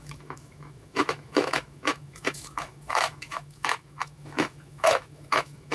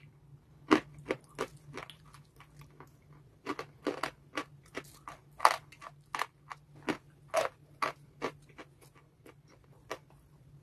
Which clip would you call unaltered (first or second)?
second